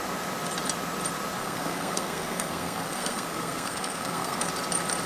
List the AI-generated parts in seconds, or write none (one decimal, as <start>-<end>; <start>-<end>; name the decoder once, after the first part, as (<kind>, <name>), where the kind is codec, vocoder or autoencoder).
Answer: 1.4-4.5 (codec, SNAC)